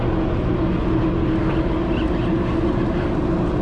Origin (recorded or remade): recorded